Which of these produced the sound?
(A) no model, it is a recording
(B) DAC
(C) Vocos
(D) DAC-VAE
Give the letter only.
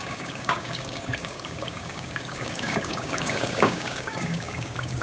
B